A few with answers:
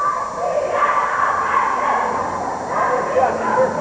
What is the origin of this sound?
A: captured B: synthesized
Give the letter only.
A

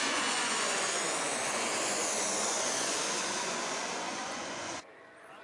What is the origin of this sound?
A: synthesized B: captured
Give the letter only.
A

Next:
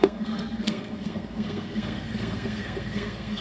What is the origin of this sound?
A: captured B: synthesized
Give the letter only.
B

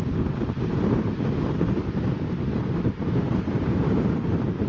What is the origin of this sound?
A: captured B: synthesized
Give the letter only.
B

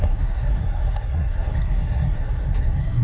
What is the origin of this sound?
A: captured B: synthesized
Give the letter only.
B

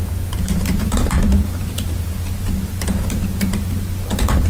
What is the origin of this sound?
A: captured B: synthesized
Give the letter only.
B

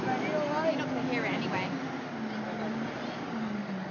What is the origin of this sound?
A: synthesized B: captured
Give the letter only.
B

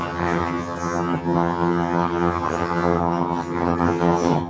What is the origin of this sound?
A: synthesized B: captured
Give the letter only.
A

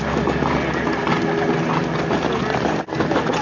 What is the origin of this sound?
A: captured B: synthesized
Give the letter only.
A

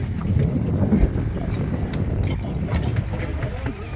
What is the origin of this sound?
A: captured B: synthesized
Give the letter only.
A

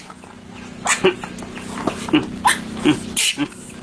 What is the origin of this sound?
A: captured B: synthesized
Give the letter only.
A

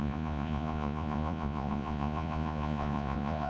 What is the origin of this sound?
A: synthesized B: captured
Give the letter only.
A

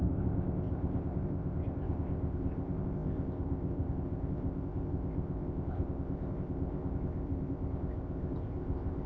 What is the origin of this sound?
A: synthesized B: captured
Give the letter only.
A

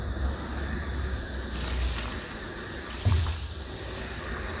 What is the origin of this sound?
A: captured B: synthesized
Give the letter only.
A